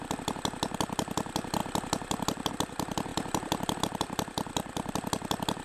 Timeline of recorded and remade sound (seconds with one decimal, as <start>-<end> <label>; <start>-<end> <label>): 0.0-5.6 recorded